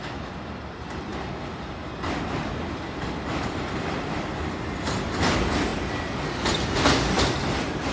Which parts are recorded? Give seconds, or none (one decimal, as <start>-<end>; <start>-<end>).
1.1-2.7; 5.7-6.2